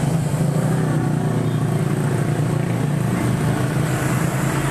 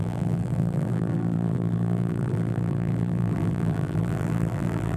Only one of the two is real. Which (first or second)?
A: first